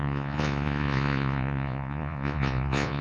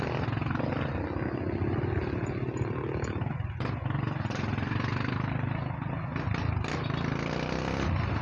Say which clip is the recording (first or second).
second